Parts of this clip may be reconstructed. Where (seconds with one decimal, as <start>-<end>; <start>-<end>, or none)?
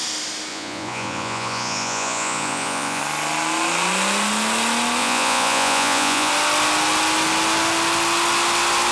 0.5-3.0; 5.0-6.3